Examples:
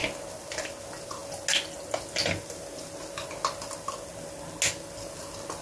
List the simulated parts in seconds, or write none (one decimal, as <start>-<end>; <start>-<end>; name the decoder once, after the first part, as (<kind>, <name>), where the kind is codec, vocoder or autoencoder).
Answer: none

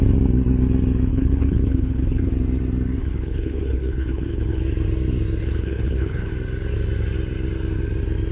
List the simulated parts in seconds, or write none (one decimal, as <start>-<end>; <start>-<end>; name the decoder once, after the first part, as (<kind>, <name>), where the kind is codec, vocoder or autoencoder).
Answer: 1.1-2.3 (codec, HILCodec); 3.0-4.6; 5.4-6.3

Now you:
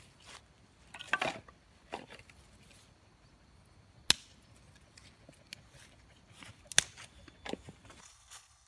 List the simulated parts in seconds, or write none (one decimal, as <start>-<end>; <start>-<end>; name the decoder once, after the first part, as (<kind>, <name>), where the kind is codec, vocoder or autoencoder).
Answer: 8.0-8.7 (codec, HILCodec)

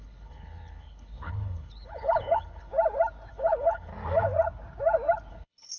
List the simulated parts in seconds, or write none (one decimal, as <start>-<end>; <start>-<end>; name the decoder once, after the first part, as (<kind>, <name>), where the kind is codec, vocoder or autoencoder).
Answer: 0.0-2.7 (codec, HILCodec); 3.3-3.9; 5.3-5.8